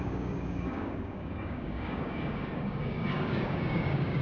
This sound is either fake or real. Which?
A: fake